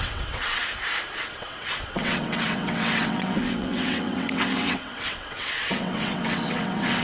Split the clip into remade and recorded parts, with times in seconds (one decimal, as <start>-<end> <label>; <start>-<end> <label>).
0.0-0.6 remade; 0.6-1.2 recorded; 1.2-7.0 remade